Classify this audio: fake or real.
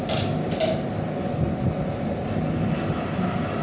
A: real